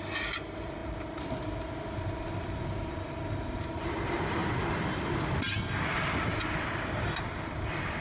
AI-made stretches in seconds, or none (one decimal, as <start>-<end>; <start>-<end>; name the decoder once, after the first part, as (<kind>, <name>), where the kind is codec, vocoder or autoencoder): 0.0-4.4 (vocoder, BigVGAN v2); 6.5-8.0